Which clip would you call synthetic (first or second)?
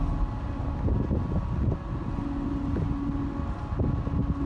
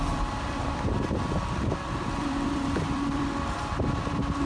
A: second